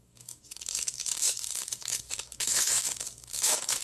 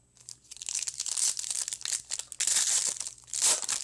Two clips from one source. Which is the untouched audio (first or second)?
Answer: second